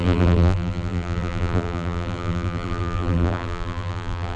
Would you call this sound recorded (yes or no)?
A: no